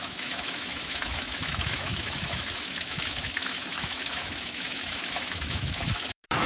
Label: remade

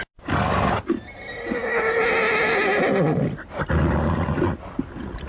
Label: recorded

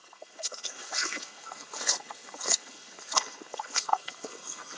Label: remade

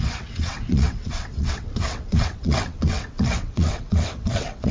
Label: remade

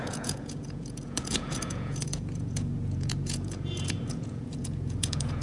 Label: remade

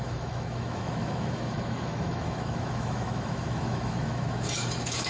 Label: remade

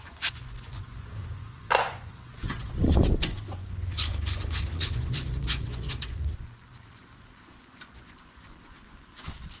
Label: remade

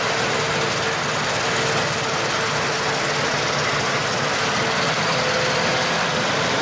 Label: recorded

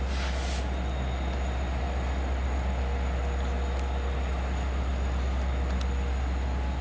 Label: recorded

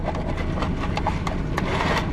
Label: recorded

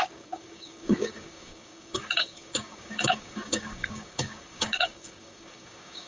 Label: remade